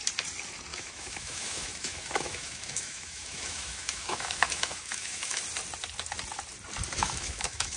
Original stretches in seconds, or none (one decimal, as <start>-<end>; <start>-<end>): 0.0-0.7; 5.4-7.0

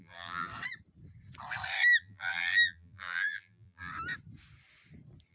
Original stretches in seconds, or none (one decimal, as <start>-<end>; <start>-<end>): 0.5-2.0; 3.9-5.3

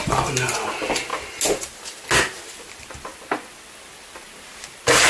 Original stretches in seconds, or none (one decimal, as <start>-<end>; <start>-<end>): 0.0-5.1